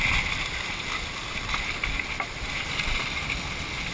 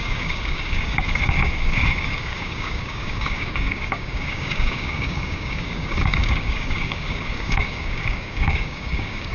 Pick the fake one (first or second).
second